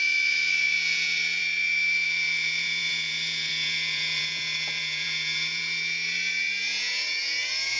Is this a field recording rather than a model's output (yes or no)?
no